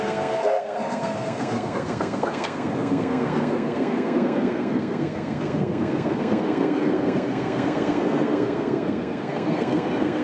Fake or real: fake